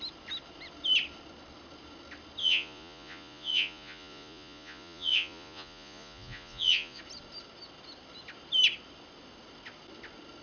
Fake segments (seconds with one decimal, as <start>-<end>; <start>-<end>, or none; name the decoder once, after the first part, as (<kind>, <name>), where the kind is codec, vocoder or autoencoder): 2.4-7.0 (vocoder, Vocos)